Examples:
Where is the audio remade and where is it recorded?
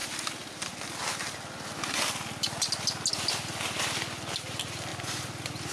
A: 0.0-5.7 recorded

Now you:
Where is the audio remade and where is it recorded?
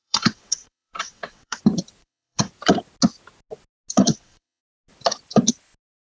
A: 0.0-1.6 remade; 1.6-2.0 recorded; 2.0-2.5 remade; 2.5-4.0 recorded; 4.0-4.6 remade; 4.6-6.1 recorded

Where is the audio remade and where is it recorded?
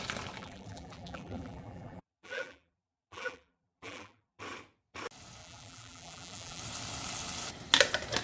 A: 0.0-0.4 recorded; 0.4-4.4 remade; 4.4-5.4 recorded; 5.4-6.6 remade; 6.6-8.2 recorded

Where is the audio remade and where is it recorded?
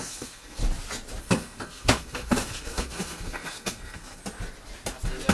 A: 0.0-0.6 remade; 0.6-1.2 recorded; 1.2-4.2 remade; 4.2-5.3 recorded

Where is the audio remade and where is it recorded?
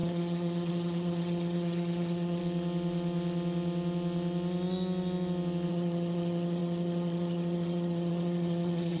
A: 0.0-2.4 remade; 2.4-5.7 recorded; 5.7-9.0 remade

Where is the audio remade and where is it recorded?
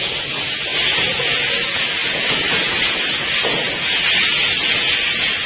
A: 0.0-5.5 remade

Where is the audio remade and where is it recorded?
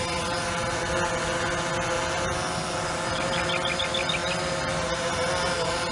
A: 0.0-5.9 recorded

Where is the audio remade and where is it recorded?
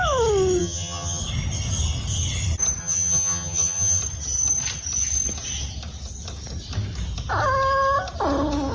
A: 0.0-0.6 recorded; 0.6-1.2 remade; 1.2-2.8 recorded; 2.8-4.0 remade; 4.0-8.7 recorded